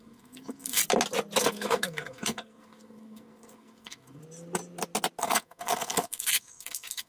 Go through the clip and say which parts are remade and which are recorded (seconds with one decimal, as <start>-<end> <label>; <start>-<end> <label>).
0.0-0.8 remade; 0.8-1.4 recorded; 1.4-4.2 remade; 4.2-5.2 recorded; 5.2-7.1 remade